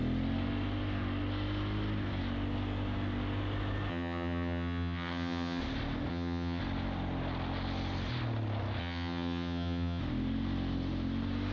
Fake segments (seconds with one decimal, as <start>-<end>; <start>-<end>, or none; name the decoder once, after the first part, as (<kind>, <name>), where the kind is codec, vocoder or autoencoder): 3.9-5.6 (vocoder, HiFi-GAN); 6.1-6.6; 8.8-10.0